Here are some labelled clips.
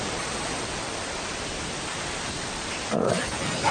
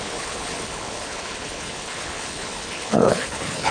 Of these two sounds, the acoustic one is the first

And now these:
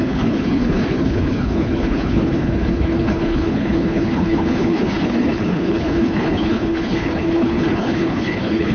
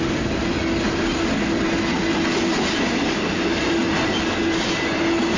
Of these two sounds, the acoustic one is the second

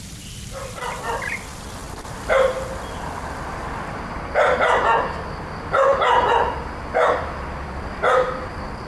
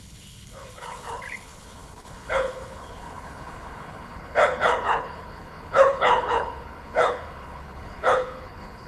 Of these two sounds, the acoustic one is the first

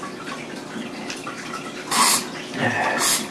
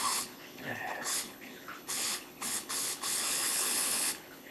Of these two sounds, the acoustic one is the first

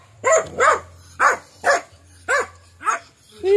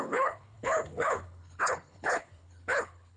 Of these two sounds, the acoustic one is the first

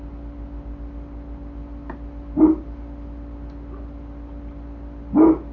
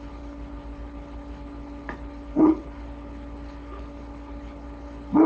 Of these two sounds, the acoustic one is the first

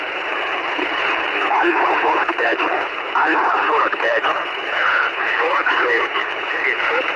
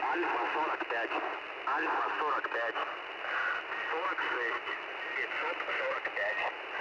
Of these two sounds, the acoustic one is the second